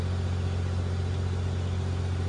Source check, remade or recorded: recorded